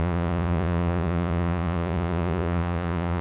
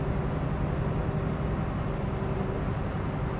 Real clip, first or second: second